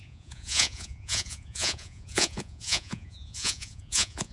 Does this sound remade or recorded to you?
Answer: remade